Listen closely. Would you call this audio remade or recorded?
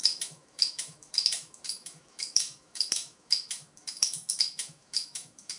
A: remade